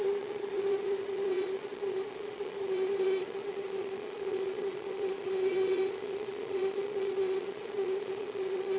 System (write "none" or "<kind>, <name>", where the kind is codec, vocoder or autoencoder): vocoder, Vocos